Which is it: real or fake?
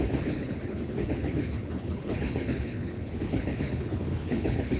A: fake